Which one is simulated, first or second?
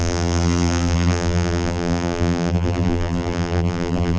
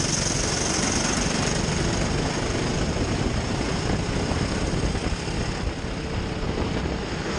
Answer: first